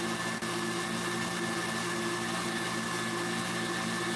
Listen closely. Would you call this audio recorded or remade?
recorded